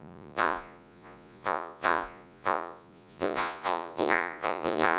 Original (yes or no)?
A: no